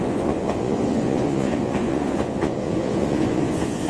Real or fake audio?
fake